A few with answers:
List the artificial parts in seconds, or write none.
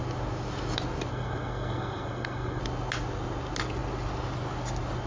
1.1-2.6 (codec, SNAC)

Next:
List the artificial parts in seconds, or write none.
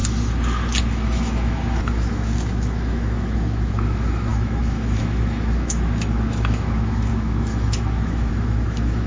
0.8-9.1 (autoencoder, DAC-VAE)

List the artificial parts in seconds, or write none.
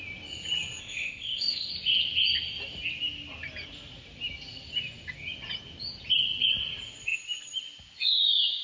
0.8-1.7 (codec, ZipCodec)